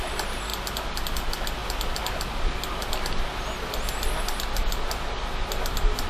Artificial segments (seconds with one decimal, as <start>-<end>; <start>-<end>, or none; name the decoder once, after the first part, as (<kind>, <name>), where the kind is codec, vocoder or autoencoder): none

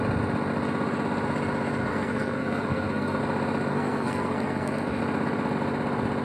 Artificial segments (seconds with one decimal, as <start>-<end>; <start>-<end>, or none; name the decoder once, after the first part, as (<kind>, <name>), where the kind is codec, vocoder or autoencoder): 1.9-3.2 (codec, SNAC); 3.7-5.0

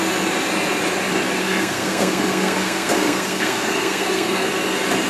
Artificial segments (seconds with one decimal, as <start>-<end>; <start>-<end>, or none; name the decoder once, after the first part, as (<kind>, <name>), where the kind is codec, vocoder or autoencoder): 1.4-4.5 (codec, SNAC)

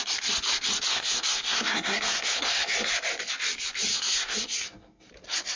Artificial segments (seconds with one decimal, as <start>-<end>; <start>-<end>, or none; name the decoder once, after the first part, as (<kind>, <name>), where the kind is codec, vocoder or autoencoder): 0.9-2.9 (codec, SNAC); 3.9-5.1